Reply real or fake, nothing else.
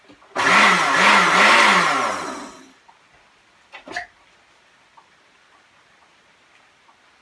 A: real